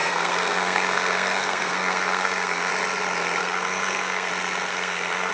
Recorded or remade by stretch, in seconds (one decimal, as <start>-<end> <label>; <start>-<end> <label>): 0.0-2.7 remade; 2.7-3.4 recorded; 3.4-4.3 remade; 4.3-4.7 recorded; 4.7-5.3 remade